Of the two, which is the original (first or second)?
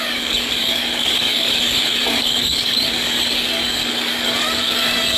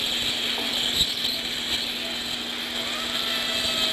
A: second